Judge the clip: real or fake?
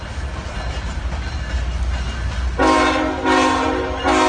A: real